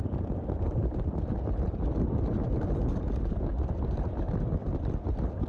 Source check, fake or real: real